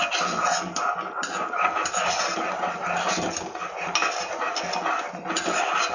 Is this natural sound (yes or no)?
yes